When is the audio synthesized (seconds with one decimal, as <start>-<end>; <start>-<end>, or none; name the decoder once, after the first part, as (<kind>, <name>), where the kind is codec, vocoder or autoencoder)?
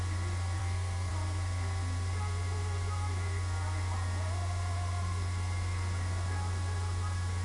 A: 0.6-1.1 (codec, SNAC)